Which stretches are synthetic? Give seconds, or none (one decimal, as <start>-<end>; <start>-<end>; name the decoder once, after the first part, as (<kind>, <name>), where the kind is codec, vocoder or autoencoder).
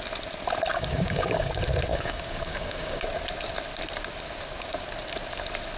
0.7-1.5 (codec, DAC); 1.9-3.0